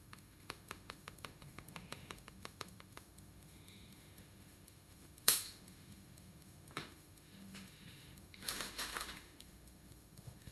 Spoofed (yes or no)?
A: yes